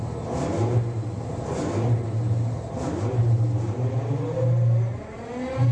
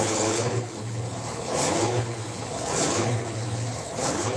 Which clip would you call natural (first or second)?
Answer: first